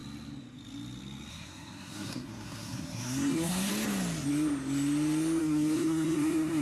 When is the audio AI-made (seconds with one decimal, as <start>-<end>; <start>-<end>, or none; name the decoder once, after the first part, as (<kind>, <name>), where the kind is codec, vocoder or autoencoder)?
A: 1.3-3.7 (codec, SNAC); 5.4-6.6